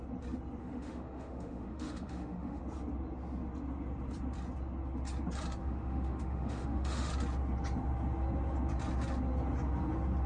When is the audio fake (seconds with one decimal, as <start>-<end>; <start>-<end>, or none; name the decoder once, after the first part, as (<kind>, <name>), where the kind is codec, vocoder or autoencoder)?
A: 0.6-2.6 (autoencoder, DAC-VAE); 5.6-7.1